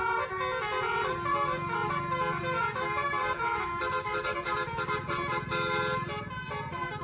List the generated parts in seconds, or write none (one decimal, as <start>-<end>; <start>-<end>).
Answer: none

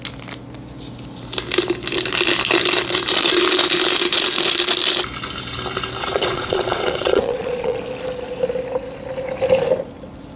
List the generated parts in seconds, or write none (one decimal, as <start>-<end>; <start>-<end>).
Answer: 6.0-7.8

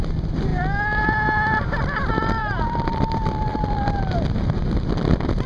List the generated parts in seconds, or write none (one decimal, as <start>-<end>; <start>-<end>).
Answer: 0.0-5.5

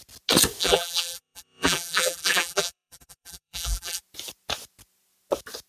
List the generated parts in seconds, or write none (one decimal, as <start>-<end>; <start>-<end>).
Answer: 0.6-4.0